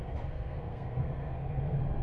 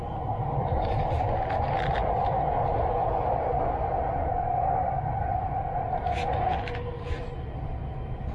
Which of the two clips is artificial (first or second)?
first